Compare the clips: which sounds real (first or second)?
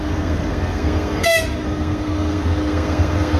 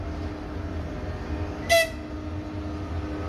second